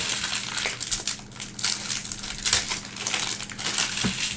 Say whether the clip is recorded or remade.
recorded